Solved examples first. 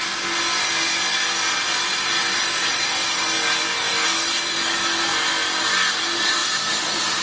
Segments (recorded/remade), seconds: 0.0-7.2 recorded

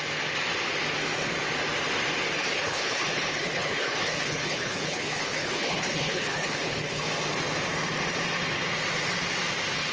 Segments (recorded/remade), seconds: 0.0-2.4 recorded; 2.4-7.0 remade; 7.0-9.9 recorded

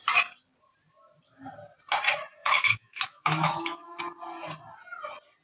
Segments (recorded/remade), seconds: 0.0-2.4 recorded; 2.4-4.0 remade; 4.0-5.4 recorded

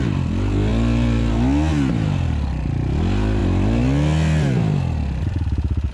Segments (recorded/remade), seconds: 0.0-5.9 recorded

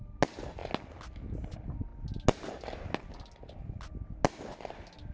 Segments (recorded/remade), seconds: 0.0-5.1 recorded

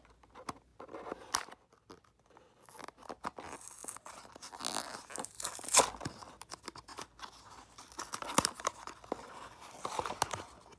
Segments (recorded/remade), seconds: 0.0-10.8 recorded

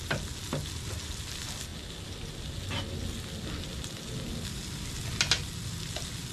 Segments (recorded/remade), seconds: 0.0-6.3 recorded

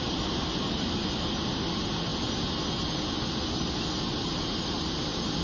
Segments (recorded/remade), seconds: 0.0-5.4 recorded